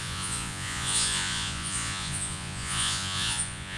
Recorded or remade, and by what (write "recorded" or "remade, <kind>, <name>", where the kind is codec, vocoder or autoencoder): remade, vocoder, Vocos